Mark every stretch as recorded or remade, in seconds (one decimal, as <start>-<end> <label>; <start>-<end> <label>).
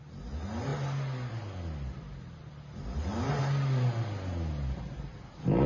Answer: 0.0-5.7 recorded